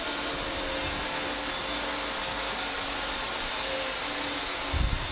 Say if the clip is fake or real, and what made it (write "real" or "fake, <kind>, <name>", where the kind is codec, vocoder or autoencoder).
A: real